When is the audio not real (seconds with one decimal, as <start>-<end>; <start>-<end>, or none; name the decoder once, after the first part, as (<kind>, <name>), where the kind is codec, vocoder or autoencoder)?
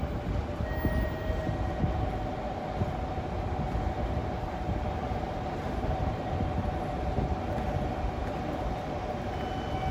4.2-6.3 (vocoder, BigVGAN v2)